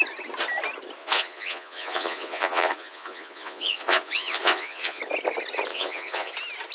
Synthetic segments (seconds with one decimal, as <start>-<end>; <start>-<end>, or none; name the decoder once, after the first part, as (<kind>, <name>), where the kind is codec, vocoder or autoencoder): 1.0-5.0 (vocoder, Vocos); 5.7-6.3